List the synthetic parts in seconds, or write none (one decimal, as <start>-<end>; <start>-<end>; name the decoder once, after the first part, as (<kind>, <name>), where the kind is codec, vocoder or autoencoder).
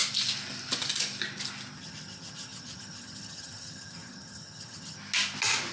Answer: 1.8-5.0 (vocoder, HiFi-GAN)